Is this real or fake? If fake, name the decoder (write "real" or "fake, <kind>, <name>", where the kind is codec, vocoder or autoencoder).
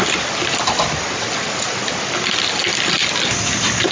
real